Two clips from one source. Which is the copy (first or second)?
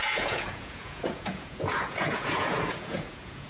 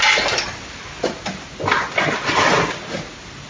first